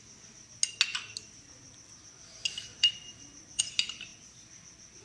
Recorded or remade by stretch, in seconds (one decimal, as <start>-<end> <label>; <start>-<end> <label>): 0.0-2.7 recorded; 2.7-3.6 remade; 3.6-5.0 recorded